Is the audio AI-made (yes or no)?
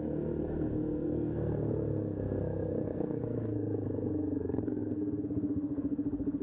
yes